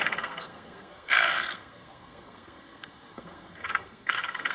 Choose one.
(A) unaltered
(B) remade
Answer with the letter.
B